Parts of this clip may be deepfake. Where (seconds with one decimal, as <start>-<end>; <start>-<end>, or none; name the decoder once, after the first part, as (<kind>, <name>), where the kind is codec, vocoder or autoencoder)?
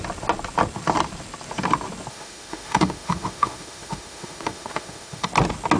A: 2.1-5.3 (autoencoder, DAC-VAE)